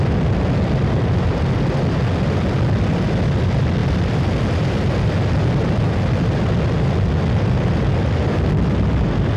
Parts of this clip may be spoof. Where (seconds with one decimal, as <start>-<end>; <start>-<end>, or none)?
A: none